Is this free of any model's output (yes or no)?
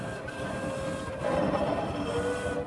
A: yes